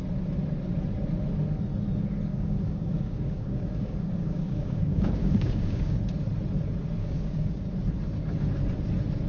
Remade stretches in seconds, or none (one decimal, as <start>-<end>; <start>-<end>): 2.3-6.0; 7.0-7.5